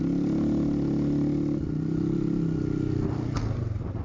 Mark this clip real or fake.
real